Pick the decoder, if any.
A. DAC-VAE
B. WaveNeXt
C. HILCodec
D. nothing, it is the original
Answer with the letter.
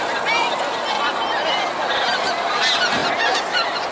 D